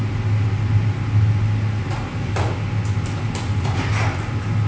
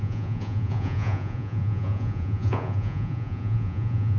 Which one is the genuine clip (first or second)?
first